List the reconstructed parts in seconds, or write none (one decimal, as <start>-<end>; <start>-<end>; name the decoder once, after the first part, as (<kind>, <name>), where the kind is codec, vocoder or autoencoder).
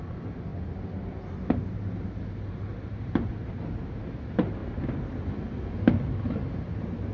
2.7-3.3 (vocoder, BigVGAN v2)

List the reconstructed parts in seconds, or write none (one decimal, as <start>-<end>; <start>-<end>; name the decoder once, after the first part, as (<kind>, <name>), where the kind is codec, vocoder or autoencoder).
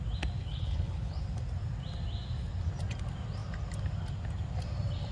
0.4-1.2 (codec, HILCodec)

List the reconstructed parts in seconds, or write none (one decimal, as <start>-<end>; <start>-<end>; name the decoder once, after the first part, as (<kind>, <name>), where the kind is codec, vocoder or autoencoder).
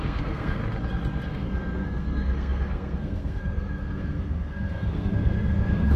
0.0-0.6 (codec, SNAC); 1.3-6.0